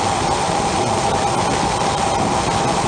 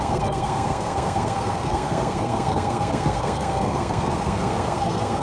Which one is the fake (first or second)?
second